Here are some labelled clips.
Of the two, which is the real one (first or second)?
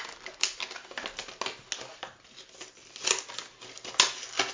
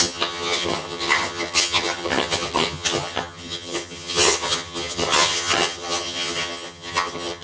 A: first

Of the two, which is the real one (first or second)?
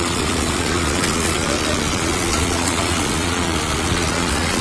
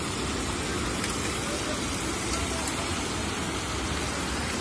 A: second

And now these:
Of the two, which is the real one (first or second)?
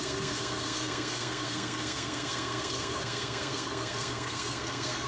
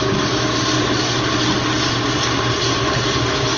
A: second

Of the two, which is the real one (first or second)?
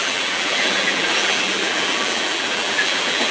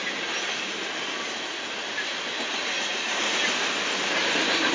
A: second